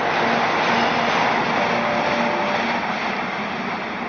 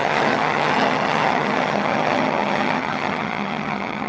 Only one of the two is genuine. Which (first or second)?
first